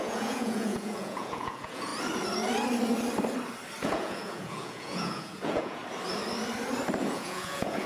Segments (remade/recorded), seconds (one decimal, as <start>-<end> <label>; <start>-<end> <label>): 0.0-1.9 remade; 1.9-3.8 recorded; 3.8-5.8 remade; 5.8-7.0 recorded; 7.0-7.9 remade